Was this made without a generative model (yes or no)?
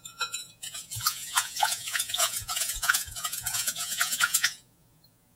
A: no